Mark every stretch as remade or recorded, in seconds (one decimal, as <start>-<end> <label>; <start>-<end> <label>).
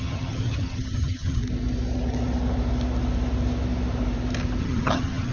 0.0-1.4 remade; 1.4-4.6 recorded; 4.6-5.3 remade